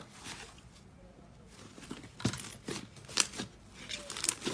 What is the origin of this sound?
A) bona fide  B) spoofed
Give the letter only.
A